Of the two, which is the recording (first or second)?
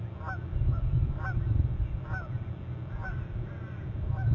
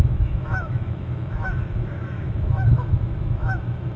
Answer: first